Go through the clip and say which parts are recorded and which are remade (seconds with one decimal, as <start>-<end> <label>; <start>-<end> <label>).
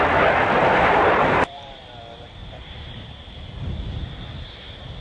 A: 0.0-0.6 recorded; 0.6-1.8 remade; 1.8-2.4 recorded; 2.4-3.8 remade; 3.8-5.0 recorded